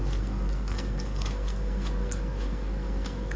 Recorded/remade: remade